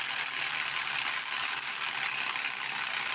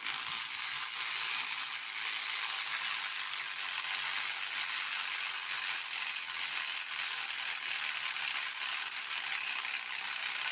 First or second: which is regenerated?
first